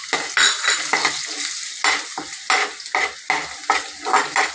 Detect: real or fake real